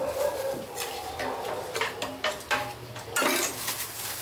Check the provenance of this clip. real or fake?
real